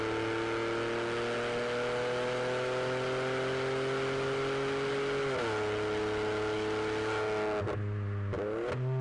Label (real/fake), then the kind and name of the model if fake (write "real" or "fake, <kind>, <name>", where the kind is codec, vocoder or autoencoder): real